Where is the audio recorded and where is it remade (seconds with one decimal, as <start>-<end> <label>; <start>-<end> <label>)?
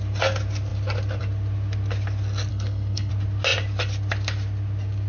0.0-2.5 recorded; 2.5-3.1 remade; 3.1-5.1 recorded